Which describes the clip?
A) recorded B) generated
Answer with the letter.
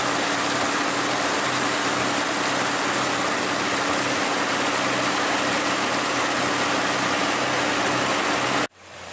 A